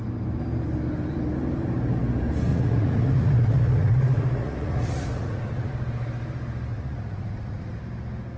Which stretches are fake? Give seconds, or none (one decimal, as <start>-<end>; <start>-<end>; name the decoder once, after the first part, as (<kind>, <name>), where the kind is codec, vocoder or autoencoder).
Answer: 2.5-5.7 (vocoder, Vocos); 6.7-7.8